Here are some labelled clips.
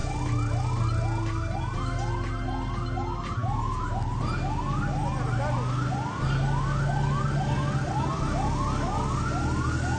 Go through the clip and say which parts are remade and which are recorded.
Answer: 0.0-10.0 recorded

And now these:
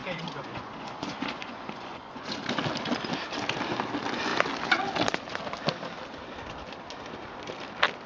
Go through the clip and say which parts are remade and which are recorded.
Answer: 0.0-2.4 remade; 2.4-8.1 recorded

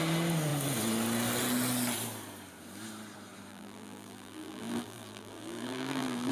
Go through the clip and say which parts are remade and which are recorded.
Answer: 0.0-3.5 recorded; 3.5-6.3 remade

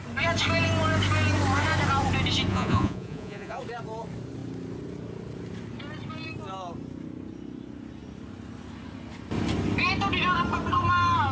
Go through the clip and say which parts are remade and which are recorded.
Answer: 0.0-2.5 recorded; 2.5-3.6 remade; 3.6-11.3 recorded

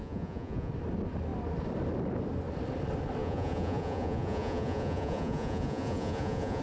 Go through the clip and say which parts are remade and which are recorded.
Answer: 0.0-0.7 remade; 0.7-3.2 recorded; 3.2-6.6 remade

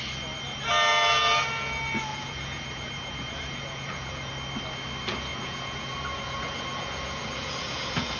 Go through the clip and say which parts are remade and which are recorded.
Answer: 0.0-2.1 recorded; 2.1-4.3 remade; 4.3-5.3 recorded; 5.3-8.2 remade